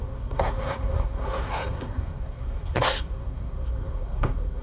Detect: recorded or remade remade